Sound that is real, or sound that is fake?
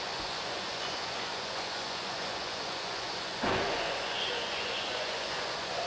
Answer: fake